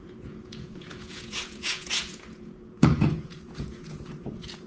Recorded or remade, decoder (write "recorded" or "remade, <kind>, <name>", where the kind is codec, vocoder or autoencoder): remade, vocoder, Vocos